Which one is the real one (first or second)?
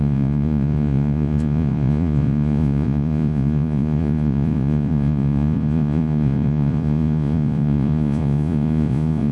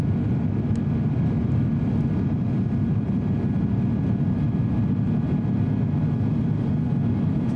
second